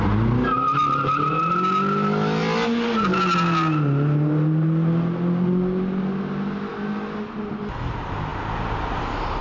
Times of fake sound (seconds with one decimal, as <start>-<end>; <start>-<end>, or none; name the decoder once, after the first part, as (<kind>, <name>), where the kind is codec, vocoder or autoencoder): none